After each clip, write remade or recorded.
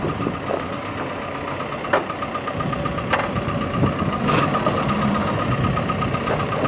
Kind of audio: recorded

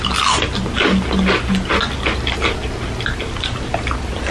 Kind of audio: recorded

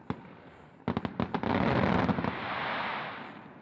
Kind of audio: recorded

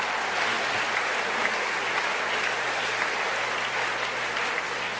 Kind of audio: remade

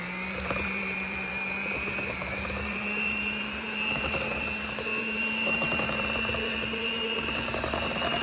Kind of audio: remade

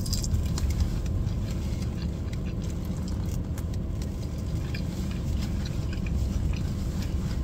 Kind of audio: recorded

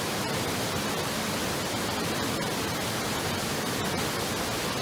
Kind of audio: recorded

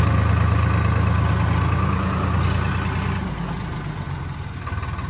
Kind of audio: recorded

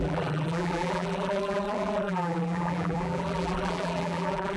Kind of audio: remade